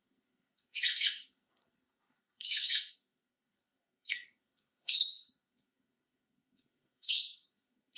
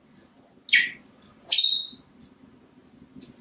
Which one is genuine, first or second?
second